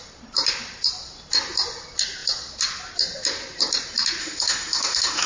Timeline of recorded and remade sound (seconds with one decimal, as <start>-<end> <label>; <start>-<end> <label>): 0.0-4.2 recorded; 4.2-5.3 remade